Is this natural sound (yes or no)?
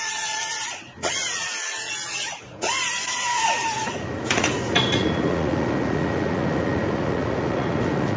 no